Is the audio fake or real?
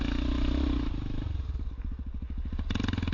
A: real